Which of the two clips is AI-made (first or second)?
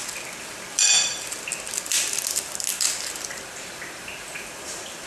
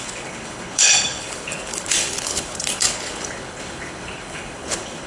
second